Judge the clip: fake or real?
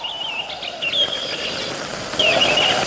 real